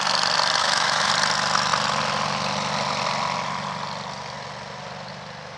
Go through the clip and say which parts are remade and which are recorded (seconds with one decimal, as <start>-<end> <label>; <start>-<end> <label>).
0.0-0.6 recorded; 0.6-1.1 remade; 1.1-5.6 recorded